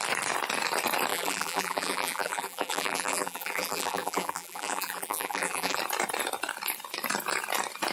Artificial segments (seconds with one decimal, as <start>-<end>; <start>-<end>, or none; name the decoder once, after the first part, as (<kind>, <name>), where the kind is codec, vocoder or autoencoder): 1.1-5.8 (vocoder, BigVGAN v2)